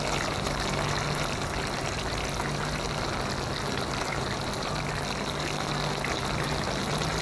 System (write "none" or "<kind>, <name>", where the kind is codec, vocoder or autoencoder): none